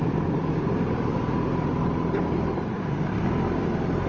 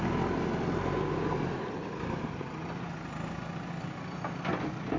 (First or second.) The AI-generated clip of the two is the first